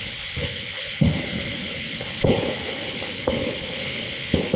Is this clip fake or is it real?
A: fake